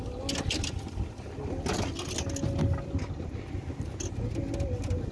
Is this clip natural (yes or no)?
yes